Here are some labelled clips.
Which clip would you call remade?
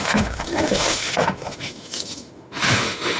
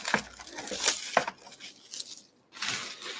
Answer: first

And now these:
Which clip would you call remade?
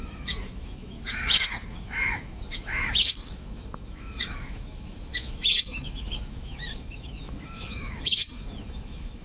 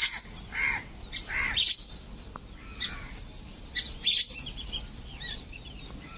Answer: first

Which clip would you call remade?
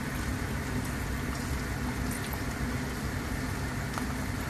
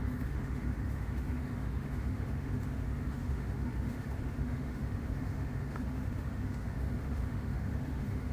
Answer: second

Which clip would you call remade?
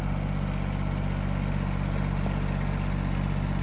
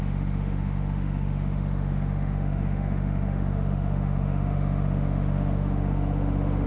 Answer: second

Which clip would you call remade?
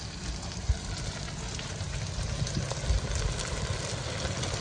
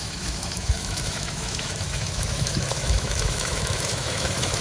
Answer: second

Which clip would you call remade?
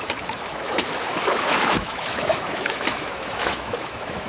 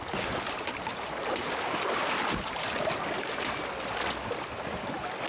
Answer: first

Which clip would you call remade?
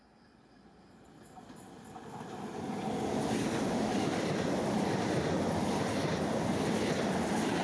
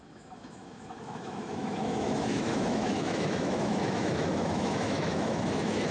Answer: second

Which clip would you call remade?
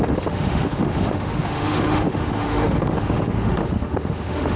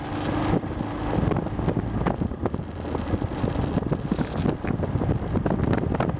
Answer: first